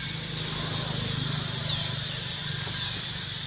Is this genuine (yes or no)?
yes